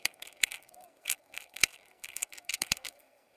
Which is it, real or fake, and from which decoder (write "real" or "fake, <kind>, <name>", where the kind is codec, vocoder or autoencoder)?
fake, codec, SNAC